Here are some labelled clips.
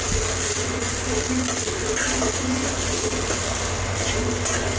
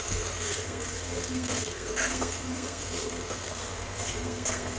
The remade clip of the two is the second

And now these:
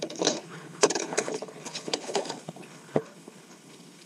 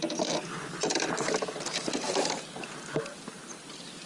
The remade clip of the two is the first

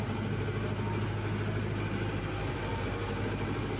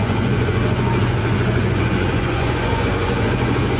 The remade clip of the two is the second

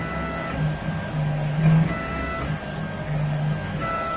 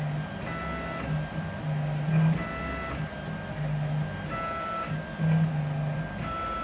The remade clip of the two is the first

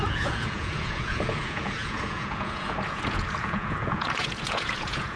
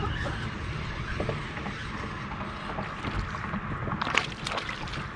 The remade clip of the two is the first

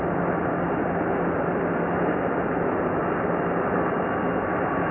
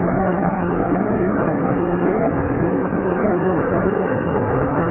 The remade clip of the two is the second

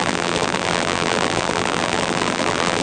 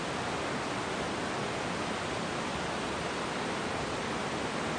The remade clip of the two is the first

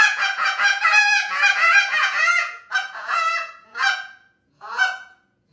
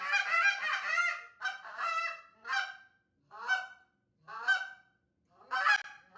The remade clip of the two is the first